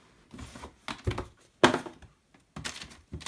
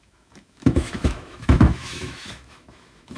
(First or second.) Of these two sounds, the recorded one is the first